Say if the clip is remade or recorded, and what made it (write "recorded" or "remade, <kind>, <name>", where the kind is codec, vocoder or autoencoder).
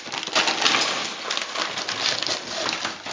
recorded